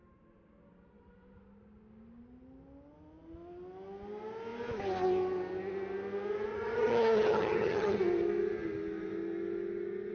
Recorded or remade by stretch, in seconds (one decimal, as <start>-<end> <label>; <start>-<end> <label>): 0.0-6.5 recorded; 6.5-8.0 remade; 8.0-10.1 recorded